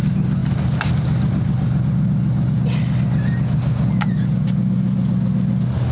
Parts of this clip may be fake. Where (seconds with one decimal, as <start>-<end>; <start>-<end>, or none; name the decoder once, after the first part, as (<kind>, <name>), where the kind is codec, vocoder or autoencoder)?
none